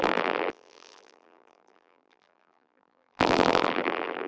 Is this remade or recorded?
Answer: remade